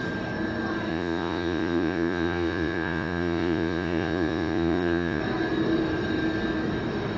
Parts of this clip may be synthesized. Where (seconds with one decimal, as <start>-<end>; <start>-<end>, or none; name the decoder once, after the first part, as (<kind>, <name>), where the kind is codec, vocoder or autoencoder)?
0.9-5.2 (vocoder, Vocos)